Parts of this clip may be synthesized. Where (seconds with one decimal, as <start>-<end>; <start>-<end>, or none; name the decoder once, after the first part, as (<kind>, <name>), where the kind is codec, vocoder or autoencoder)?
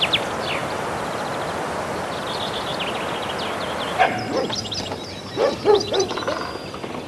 none